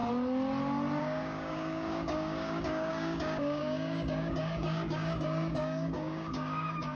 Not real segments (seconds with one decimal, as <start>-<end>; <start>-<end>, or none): 1.0-7.0